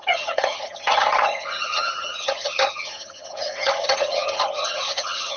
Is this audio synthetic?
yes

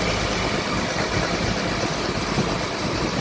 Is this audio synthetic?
no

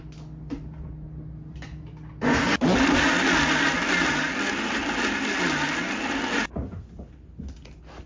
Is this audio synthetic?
no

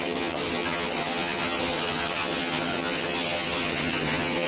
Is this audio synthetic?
yes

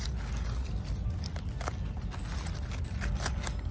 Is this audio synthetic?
no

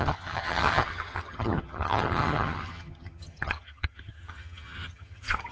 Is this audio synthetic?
yes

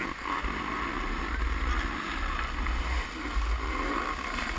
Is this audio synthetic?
no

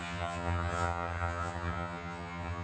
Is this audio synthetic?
yes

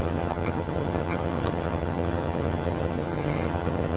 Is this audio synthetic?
yes